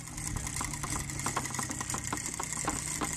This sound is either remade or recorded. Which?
recorded